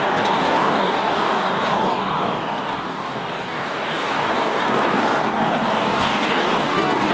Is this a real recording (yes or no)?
no